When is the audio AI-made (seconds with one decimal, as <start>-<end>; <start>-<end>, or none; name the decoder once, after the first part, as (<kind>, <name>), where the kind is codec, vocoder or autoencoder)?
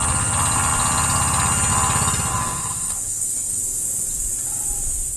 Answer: 2.3-3.6 (codec, SNAC)